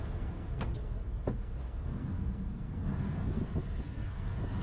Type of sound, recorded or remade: remade